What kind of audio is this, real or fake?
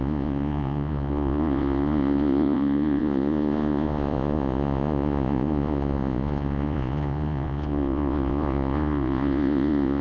fake